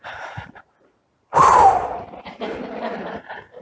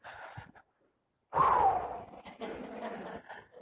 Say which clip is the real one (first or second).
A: second